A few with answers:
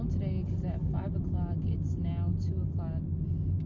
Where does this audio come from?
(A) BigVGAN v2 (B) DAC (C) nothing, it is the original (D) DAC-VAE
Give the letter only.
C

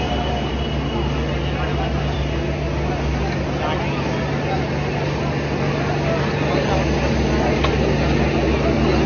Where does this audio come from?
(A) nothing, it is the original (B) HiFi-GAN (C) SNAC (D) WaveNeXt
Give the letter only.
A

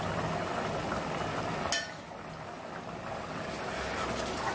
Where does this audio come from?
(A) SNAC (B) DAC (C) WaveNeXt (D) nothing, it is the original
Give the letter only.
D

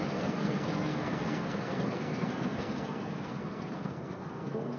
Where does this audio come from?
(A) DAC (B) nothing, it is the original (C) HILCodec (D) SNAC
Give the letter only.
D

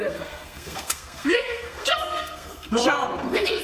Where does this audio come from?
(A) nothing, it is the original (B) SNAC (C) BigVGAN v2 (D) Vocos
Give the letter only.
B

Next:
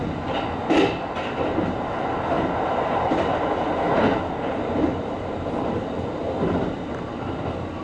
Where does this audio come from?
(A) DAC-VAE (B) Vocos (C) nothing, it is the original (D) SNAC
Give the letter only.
C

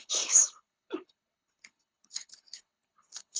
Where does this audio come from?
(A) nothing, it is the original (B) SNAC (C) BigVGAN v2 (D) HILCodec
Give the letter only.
D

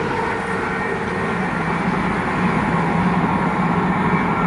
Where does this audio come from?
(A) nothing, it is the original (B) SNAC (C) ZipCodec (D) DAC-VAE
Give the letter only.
A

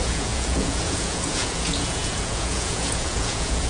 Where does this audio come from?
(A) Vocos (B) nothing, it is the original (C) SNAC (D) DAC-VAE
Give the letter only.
A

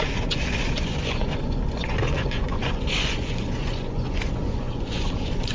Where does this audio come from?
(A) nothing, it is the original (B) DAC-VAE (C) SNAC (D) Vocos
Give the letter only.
D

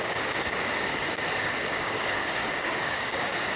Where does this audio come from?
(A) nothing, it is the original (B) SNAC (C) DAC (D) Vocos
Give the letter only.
C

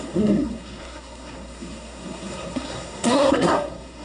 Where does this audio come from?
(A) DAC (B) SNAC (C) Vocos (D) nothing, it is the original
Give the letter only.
B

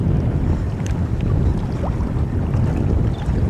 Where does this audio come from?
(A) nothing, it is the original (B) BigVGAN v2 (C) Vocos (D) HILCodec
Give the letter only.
A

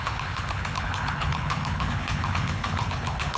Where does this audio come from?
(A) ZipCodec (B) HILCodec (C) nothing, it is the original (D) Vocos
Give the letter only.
B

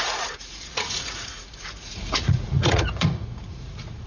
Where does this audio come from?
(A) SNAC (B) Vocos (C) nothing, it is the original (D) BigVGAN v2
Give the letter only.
B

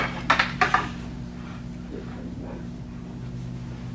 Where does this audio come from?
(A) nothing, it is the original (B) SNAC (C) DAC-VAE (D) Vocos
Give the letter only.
A